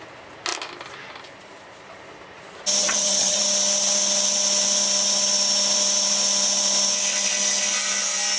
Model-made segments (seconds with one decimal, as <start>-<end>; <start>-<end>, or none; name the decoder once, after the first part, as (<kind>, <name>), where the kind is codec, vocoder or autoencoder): 2.8-3.4 (vocoder, HiFi-GAN)